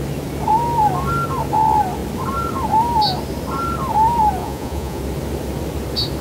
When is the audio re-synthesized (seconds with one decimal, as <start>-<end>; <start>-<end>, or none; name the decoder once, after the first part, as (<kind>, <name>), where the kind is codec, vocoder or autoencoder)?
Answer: 4.4-5.0 (vocoder, Vocos)